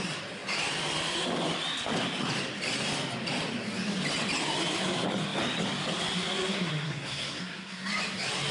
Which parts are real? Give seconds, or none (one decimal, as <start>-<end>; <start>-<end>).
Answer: 0.0-6.5; 7.9-8.5